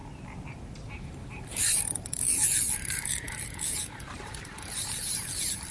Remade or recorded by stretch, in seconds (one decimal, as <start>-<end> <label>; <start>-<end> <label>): 0.0-1.1 recorded; 1.1-5.7 remade